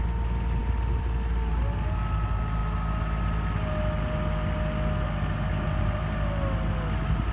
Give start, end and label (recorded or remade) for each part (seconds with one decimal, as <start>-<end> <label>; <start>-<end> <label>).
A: 0.0-7.3 recorded